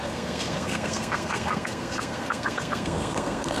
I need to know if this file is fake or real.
fake